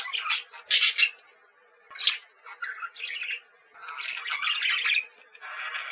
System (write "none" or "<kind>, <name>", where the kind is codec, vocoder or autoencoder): none